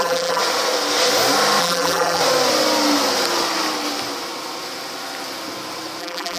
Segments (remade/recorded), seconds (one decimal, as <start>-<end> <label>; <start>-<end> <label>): 0.0-0.4 remade; 0.4-1.6 recorded; 1.6-2.2 remade; 2.2-6.0 recorded; 6.0-6.4 remade